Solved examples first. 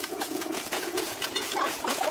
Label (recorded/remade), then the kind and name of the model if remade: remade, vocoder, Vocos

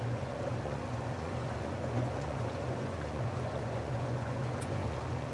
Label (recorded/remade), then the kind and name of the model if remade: remade, vocoder, Vocos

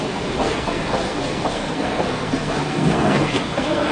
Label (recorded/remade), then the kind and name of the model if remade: remade, codec, SNAC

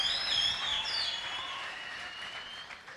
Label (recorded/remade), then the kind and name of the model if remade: remade, vocoder, BigVGAN v2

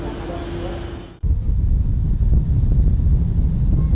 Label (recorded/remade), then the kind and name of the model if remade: recorded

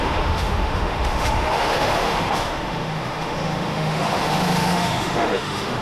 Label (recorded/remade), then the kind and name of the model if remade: remade, autoencoder, DAC-VAE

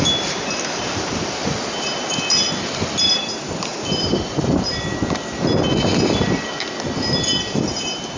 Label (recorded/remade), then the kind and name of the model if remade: recorded